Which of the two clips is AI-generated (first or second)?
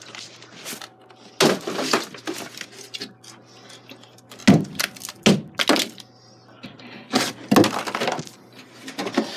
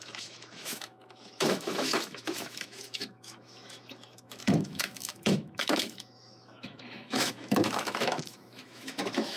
second